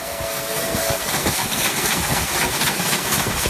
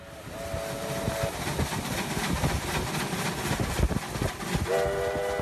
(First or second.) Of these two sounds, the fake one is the first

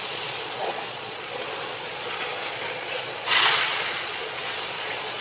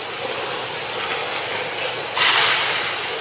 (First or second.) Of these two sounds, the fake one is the first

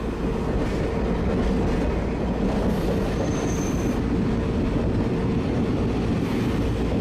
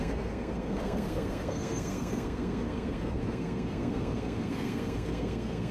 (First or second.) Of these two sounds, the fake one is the second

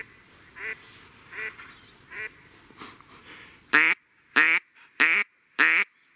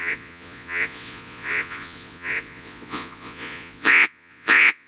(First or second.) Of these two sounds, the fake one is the second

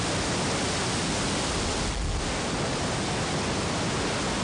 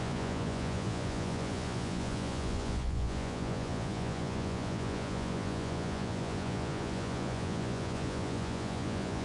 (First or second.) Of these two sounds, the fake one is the second